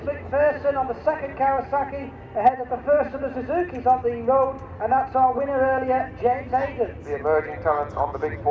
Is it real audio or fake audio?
real